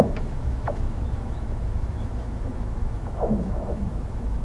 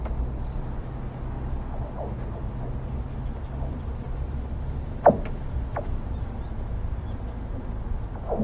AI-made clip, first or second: first